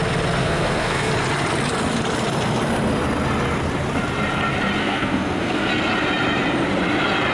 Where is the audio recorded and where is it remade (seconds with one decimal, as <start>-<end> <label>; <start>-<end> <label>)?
0.0-0.4 recorded; 0.4-1.1 remade; 1.1-4.8 recorded; 4.8-5.7 remade; 5.7-7.3 recorded